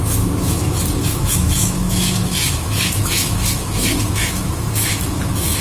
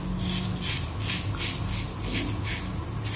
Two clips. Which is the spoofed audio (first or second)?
first